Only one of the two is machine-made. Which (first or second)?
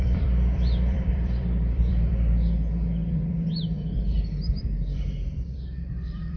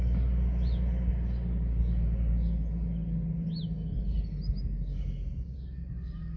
first